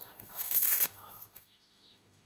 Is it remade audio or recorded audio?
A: remade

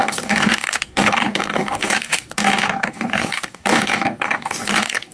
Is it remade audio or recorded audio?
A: remade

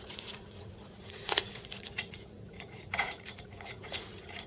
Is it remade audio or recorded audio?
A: remade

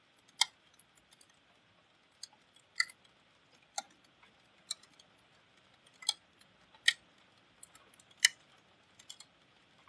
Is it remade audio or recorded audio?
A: recorded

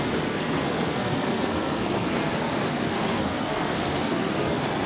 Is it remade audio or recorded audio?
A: remade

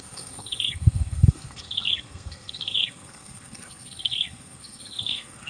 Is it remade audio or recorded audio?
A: remade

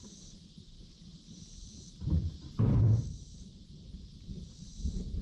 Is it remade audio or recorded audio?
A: remade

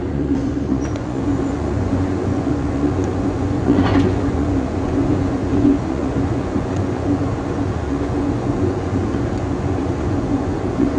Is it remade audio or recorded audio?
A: remade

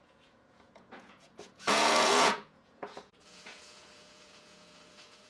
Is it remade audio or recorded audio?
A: remade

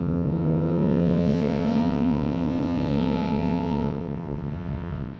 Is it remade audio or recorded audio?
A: remade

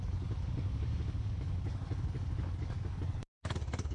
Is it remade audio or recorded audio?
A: remade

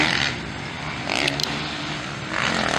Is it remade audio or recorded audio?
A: recorded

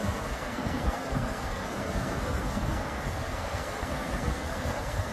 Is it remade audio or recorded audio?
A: remade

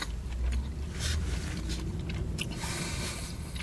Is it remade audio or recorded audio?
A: recorded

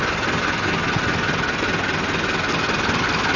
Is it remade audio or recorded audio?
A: recorded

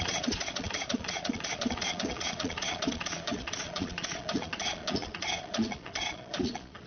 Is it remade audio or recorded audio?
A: remade